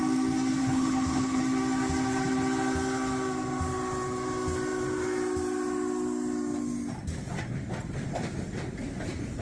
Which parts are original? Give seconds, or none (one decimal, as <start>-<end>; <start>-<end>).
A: 0.0-0.6; 1.4-9.4